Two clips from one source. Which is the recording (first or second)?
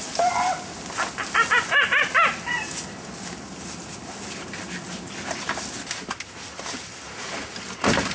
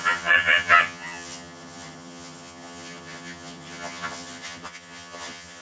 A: first